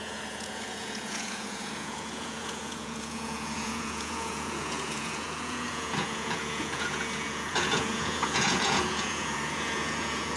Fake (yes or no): yes